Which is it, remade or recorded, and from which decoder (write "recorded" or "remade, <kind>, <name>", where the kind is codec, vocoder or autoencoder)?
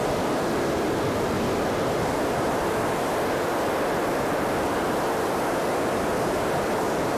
recorded